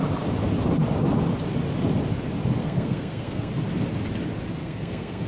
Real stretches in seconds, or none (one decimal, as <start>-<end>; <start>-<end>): 0.0-2.6; 3.5-4.6